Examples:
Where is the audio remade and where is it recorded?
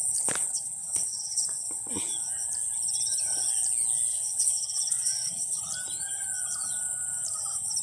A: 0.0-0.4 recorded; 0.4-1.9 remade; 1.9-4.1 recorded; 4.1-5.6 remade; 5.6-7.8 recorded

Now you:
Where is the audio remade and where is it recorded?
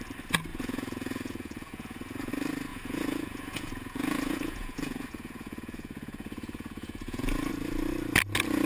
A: 0.0-0.5 recorded; 0.5-2.3 remade; 2.3-2.7 recorded; 2.7-7.5 remade; 7.5-8.7 recorded